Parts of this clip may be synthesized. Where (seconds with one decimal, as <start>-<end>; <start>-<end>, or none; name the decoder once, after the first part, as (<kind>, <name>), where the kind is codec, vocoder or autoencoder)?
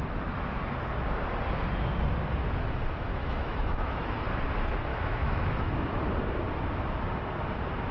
3.1-4.2 (autoencoder, DAC-VAE); 4.9-5.7